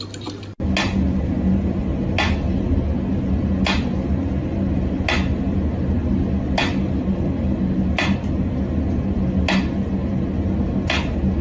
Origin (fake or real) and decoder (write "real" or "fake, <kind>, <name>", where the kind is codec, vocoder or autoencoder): real